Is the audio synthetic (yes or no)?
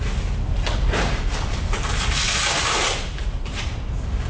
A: yes